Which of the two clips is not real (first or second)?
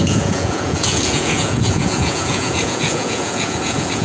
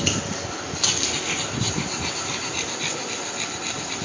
first